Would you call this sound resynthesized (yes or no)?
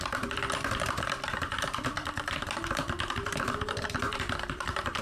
yes